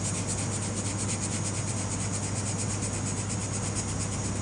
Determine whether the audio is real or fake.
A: real